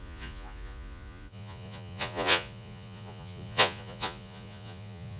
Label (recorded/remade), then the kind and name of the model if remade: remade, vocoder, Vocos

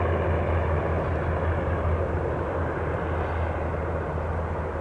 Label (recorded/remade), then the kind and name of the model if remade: recorded